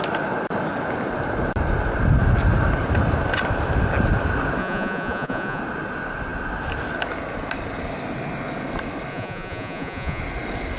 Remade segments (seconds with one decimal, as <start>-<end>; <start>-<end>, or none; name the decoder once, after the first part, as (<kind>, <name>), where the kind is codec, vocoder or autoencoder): 4.6-5.6 (vocoder, Vocos); 9.1-10.2